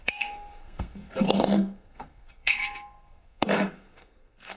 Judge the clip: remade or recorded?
remade